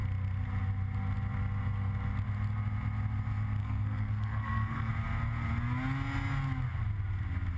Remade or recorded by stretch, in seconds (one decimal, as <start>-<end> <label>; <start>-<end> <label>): 0.0-3.6 recorded; 3.6-4.9 remade; 4.9-7.6 recorded